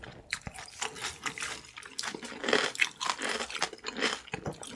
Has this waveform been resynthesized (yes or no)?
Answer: no